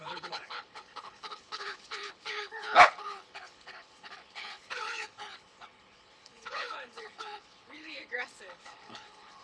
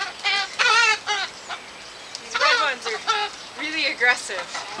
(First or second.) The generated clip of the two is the first